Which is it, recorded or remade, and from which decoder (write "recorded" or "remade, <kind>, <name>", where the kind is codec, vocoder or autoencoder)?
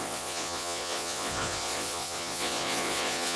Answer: remade, vocoder, Vocos